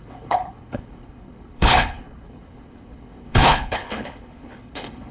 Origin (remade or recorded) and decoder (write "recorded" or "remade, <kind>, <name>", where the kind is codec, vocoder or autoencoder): remade, codec, HILCodec